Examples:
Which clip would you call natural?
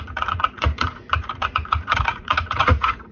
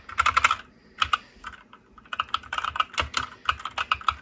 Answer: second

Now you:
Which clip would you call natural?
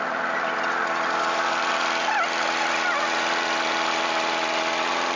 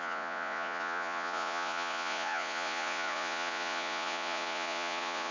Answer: first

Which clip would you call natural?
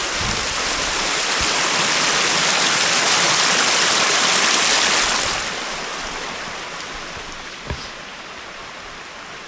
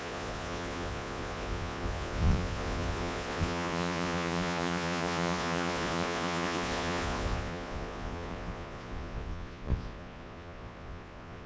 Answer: first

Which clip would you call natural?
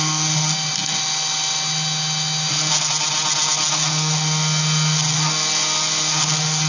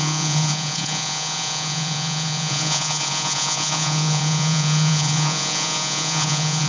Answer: first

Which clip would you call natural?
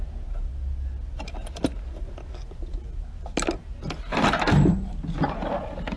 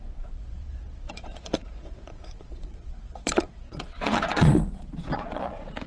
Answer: first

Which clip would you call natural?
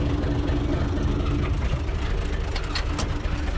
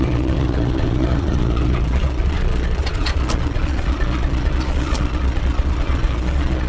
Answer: first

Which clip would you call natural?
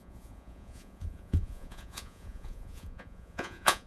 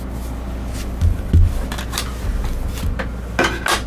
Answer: second